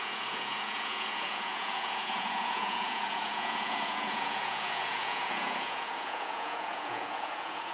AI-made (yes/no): yes